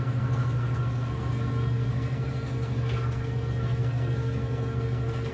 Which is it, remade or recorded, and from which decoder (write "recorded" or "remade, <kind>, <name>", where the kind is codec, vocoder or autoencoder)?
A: remade, codec, SNAC